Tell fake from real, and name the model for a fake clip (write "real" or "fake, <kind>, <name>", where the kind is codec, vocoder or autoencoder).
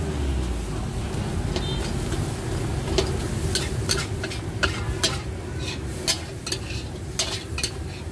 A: real